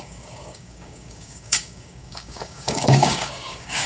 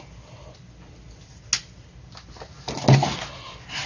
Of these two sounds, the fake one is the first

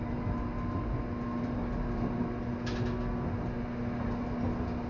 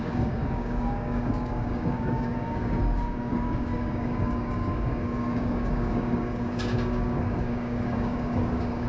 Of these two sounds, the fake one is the second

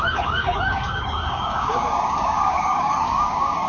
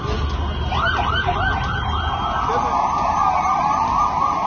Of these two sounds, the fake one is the first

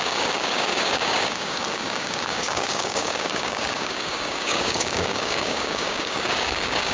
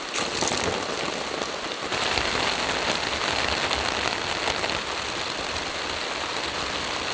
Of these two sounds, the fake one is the first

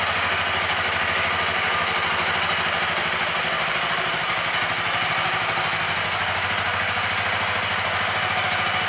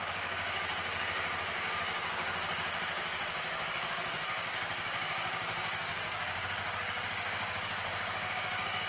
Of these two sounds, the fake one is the second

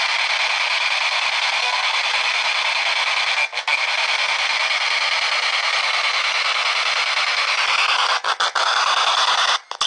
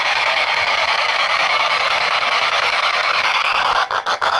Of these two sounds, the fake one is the second